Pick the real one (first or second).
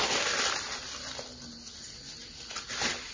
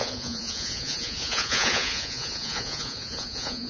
first